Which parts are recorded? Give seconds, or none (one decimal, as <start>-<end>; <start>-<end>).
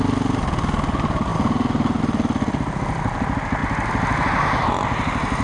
0.0-5.4